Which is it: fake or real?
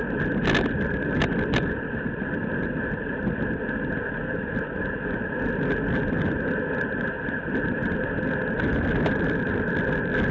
real